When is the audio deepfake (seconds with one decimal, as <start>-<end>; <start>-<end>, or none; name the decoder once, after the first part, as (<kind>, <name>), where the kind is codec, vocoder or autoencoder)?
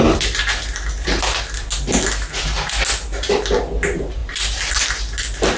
none